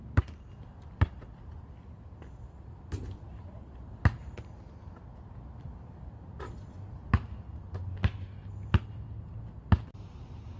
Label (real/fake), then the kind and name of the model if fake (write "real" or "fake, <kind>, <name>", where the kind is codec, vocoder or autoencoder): real